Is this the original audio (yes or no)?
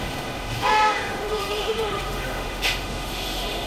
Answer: no